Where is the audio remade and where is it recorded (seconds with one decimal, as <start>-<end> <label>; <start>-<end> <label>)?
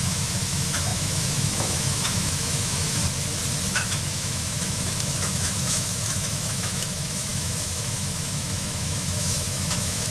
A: 0.0-3.0 remade; 3.0-3.7 recorded; 3.7-10.1 remade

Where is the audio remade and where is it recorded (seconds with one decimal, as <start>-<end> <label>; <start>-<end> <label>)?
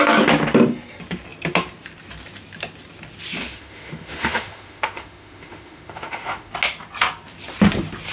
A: 0.0-3.4 recorded; 3.4-6.5 remade; 6.5-8.1 recorded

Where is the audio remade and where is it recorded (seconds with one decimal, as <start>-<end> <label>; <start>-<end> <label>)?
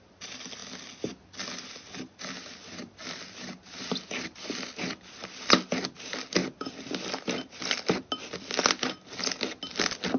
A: 0.0-10.2 recorded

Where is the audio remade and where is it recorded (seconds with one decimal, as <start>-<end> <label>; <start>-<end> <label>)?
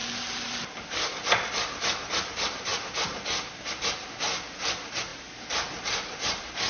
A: 0.0-6.7 recorded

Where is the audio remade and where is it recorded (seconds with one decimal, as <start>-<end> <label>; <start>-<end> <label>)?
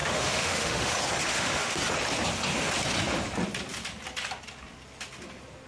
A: 0.0-0.9 remade; 0.9-1.3 recorded; 1.3-1.8 remade; 1.8-5.7 recorded